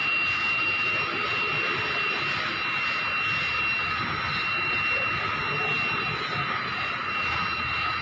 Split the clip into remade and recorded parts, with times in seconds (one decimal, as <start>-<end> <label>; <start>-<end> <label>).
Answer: 0.0-8.0 recorded